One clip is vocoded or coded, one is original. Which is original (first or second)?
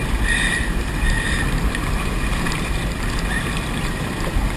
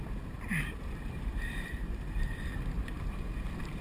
first